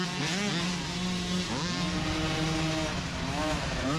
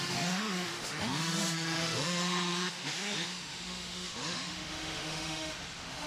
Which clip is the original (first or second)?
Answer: first